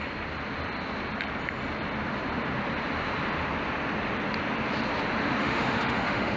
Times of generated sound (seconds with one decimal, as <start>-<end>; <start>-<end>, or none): 5.4-6.4